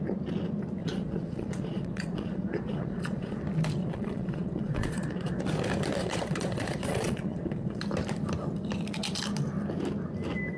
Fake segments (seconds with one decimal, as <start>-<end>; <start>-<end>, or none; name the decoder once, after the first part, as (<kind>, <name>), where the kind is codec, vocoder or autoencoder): 0.8-3.4 (vocoder, Vocos); 3.8-5.4; 6.0-7.8